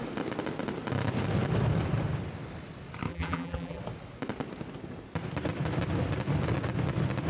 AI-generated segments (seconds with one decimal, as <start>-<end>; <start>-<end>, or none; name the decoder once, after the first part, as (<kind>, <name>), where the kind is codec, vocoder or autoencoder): 3.1-3.8 (vocoder, BigVGAN v2)